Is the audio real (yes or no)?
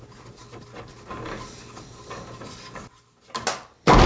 yes